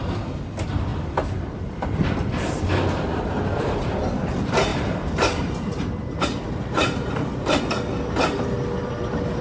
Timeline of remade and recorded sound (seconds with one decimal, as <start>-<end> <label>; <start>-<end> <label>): 0.0-4.7 recorded; 4.7-7.6 remade; 7.6-9.4 recorded